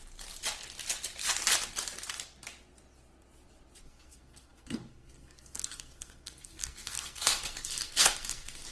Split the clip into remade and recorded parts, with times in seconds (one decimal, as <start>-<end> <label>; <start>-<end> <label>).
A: 0.0-3.8 recorded; 3.8-8.7 remade